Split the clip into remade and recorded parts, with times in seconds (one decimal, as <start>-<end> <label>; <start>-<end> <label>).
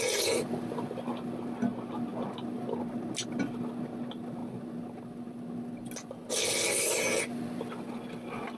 0.0-8.6 recorded